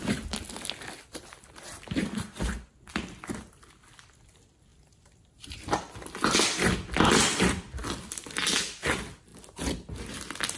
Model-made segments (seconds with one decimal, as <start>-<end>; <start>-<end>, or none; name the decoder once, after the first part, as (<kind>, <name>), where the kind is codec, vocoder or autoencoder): 4.7-5.8 (vocoder, BigVGAN v2)